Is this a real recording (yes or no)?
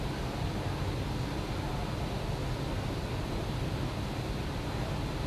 yes